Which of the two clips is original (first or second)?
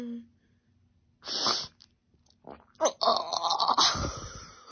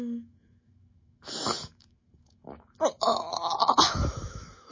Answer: first